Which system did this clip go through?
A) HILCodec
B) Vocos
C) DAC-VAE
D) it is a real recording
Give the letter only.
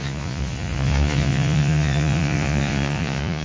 B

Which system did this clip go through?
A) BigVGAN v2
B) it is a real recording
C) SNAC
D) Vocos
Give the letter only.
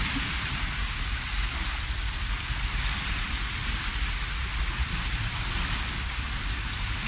B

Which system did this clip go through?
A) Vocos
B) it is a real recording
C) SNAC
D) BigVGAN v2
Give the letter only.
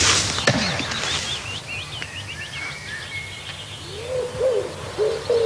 B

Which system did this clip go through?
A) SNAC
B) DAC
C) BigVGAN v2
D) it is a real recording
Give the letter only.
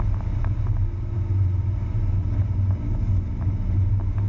D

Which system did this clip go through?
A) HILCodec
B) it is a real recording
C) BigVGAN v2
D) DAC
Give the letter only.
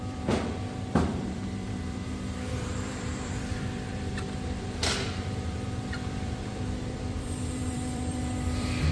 C